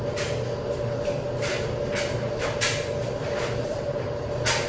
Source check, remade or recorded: recorded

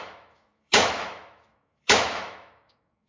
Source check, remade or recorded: remade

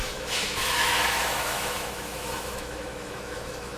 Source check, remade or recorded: remade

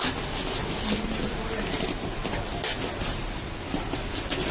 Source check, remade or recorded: recorded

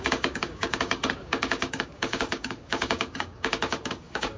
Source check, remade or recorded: remade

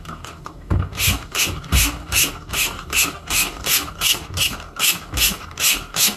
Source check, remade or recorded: remade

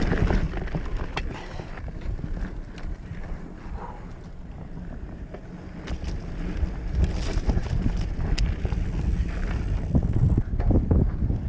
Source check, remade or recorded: recorded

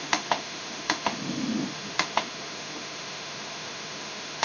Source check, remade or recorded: remade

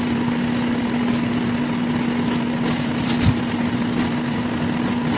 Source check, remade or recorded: recorded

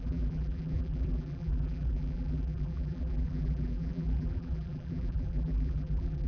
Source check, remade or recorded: remade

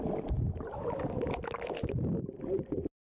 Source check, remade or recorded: recorded